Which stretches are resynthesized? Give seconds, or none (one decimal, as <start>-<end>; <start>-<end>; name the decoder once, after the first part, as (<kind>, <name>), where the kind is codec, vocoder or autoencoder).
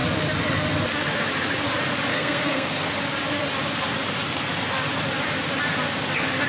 2.1-2.9 (codec, SNAC)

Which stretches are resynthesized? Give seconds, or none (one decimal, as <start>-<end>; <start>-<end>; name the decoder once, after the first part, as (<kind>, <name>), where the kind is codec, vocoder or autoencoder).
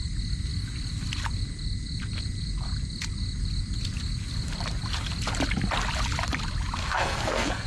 6.8-7.7 (codec, SNAC)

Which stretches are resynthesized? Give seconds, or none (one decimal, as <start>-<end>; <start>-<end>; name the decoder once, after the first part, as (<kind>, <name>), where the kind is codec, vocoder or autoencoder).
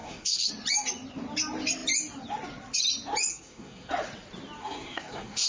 0.0-0.5 (codec, SNAC); 3.3-3.9; 4.6-5.5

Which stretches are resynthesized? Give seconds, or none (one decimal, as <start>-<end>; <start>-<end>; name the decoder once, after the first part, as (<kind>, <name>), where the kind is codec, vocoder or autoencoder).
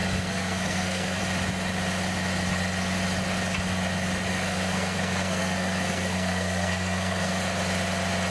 0.0-1.2 (codec, SNAC); 4.3-7.4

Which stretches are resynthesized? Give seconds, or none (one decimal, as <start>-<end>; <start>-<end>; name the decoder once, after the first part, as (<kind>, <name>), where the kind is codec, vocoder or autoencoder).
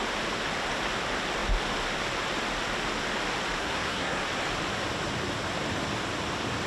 3.6-4.2 (codec, SNAC)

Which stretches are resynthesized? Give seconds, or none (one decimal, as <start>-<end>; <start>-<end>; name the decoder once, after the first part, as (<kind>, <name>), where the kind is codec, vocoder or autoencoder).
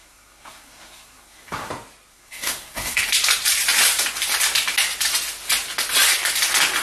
0.0-1.7 (codec, SNAC); 2.1-3.0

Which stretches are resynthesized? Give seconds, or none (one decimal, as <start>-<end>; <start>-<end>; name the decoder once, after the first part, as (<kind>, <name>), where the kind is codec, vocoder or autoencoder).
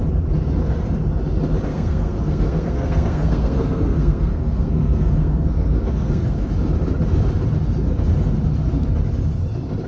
1.7-6.4 (codec, SNAC)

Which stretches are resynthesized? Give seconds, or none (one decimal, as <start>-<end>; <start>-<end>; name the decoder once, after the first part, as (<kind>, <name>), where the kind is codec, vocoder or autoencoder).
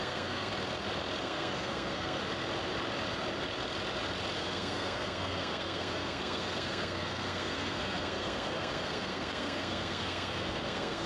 0.0-0.5 (codec, SNAC); 1.2-2.2; 4.4-11.1